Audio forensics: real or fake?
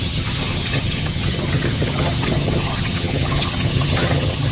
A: fake